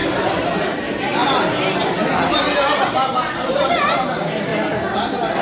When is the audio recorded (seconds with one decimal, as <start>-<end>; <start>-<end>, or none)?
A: 1.2-3.5; 4.5-5.4